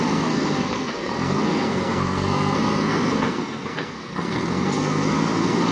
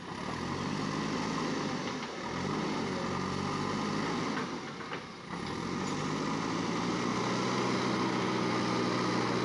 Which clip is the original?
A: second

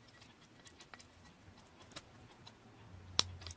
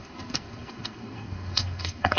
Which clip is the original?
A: first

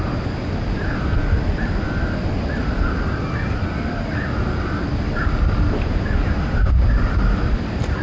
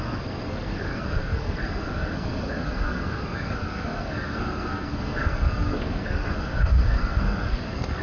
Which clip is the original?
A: first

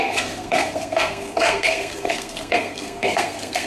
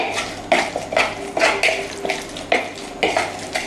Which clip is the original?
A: second